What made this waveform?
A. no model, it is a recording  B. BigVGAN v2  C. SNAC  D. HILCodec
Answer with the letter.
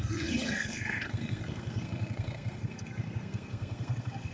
C